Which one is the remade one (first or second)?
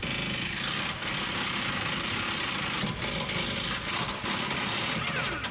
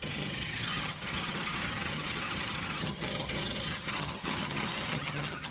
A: second